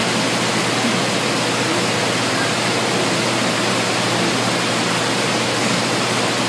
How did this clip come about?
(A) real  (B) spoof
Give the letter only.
A